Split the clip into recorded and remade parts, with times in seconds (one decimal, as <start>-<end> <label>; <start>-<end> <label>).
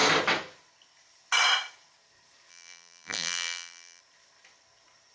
0.0-2.5 recorded; 2.5-4.0 remade; 4.0-5.1 recorded